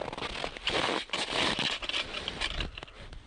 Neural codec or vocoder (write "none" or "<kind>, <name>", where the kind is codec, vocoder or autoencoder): none